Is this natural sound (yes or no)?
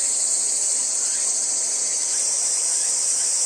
yes